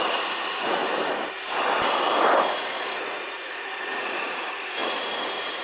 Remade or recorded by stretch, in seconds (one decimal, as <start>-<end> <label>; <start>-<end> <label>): 0.0-0.8 remade; 0.8-2.5 recorded; 2.5-5.6 remade